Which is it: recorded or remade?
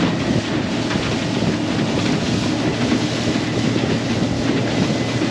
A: recorded